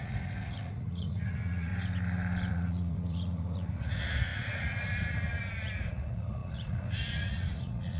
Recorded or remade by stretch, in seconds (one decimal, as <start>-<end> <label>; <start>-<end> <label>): 0.0-1.7 remade; 1.7-2.5 recorded; 2.5-8.0 remade